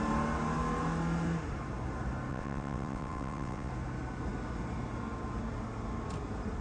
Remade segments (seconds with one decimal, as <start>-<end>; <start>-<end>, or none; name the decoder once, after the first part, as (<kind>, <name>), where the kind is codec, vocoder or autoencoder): 2.3-3.7 (vocoder, WaveNeXt)